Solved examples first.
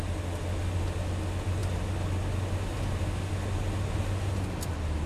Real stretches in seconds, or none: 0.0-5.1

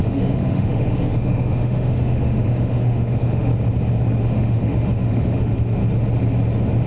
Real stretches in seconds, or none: 3.5-4.2; 5.8-6.9

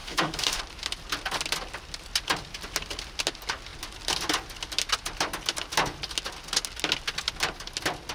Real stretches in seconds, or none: 0.6-8.1